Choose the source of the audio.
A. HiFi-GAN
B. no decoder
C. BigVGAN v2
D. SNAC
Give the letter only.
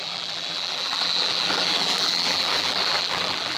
C